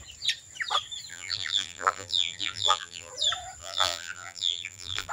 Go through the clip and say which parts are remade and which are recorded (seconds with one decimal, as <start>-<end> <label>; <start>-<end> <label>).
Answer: 0.0-1.1 recorded; 1.1-3.1 remade; 3.1-3.6 recorded; 3.6-5.1 remade